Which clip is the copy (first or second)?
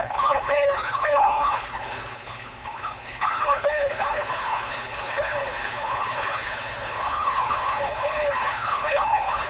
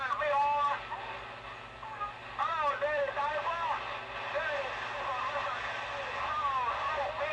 first